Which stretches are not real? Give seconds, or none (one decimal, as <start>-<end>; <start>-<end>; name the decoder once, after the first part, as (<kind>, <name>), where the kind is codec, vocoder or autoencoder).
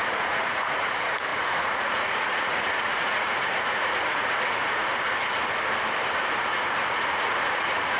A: 0.0-4.9 (vocoder, Vocos); 6.4-8.0